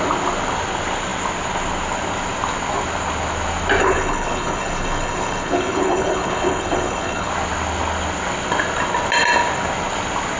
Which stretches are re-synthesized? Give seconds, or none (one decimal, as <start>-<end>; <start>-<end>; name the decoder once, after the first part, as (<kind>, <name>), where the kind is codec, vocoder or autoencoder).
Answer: 3.8-7.3 (codec, HILCodec)

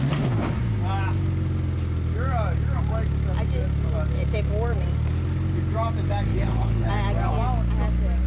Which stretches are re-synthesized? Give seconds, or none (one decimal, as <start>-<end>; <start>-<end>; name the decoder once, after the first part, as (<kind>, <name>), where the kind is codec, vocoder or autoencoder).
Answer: 6.3-6.9 (codec, HILCodec)

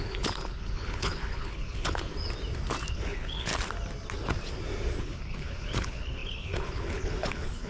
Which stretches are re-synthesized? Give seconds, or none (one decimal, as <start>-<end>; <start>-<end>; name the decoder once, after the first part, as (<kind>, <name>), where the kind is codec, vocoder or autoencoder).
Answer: 0.0-2.1 (codec, HILCodec); 2.9-3.5; 5.0-7.7

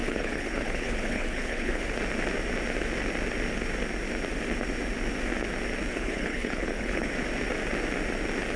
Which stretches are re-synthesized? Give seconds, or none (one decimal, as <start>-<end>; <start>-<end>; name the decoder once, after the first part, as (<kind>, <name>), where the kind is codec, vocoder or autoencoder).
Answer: 0.0-1.8 (codec, HILCodec); 5.9-7.1

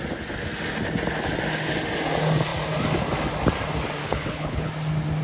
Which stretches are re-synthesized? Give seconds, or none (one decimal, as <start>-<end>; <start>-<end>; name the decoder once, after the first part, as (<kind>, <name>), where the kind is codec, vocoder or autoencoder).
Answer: 4.0-4.7 (codec, HILCodec)

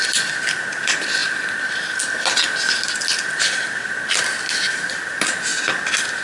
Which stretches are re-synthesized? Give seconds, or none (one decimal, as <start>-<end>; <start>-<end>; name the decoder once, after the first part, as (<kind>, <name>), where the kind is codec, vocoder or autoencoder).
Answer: none

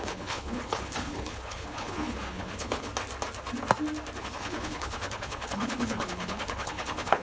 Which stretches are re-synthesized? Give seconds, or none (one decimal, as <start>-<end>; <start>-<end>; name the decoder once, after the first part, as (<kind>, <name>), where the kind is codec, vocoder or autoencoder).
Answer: 0.0-2.9 (codec, HILCodec); 4.2-7.2

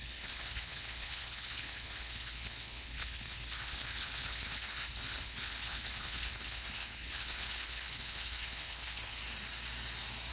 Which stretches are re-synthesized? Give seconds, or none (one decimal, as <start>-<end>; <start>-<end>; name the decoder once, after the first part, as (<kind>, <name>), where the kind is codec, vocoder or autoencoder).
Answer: 0.0-9.2 (codec, HILCodec)